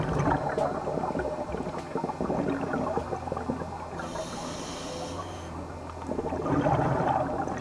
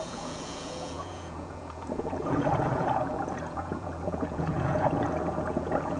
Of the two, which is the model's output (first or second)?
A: second